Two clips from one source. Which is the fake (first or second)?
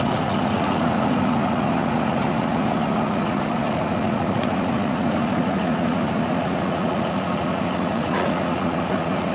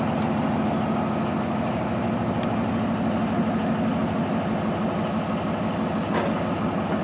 first